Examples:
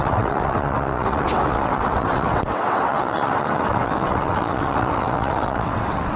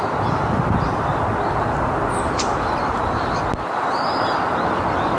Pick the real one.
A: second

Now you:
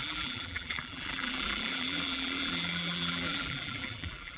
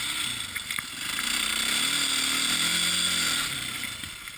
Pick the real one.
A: second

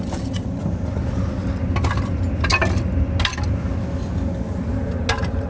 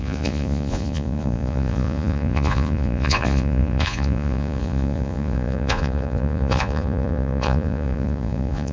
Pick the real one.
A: first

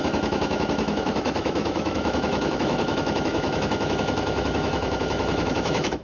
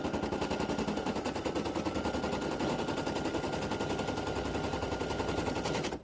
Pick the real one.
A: second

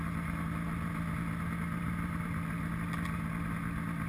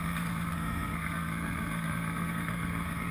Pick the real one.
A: first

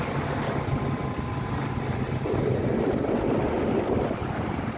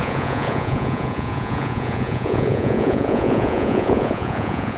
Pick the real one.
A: first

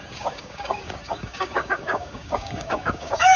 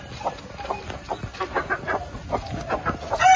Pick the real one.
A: second